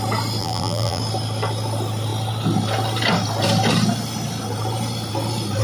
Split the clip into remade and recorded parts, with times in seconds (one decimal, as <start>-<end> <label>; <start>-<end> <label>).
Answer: 0.0-0.4 recorded; 0.4-1.0 remade; 1.0-5.6 recorded